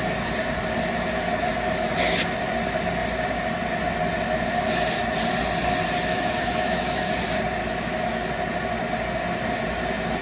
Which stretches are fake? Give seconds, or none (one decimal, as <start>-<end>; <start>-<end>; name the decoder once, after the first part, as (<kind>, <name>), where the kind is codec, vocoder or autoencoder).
6.1-7.1 (autoencoder, DAC-VAE); 7.6-8.3